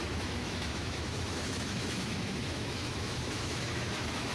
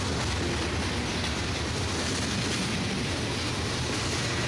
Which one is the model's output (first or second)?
first